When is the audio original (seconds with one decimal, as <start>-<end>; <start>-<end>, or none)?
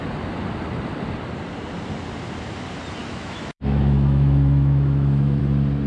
0.0-3.0; 5.4-5.9